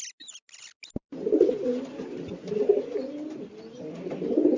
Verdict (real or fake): real